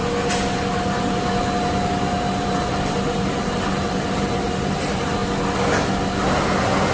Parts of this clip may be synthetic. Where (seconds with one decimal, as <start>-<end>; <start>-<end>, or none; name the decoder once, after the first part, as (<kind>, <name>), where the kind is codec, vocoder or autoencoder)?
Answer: 2.7-5.2 (vocoder, BigVGAN v2)